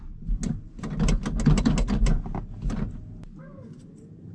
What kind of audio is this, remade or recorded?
recorded